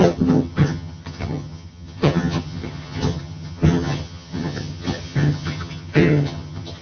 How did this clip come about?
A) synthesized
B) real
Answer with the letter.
A